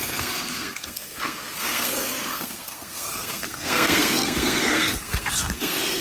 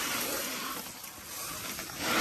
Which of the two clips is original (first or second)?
second